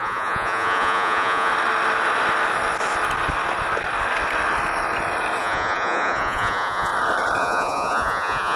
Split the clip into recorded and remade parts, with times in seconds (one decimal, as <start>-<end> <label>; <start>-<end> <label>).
0.0-1.5 remade; 1.5-5.4 recorded; 5.4-6.9 remade; 6.9-7.4 recorded; 7.4-8.6 remade